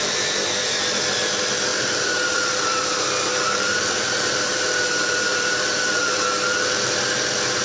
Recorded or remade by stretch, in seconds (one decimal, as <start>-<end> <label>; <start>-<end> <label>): 0.0-1.7 recorded; 1.7-6.2 remade; 6.2-7.6 recorded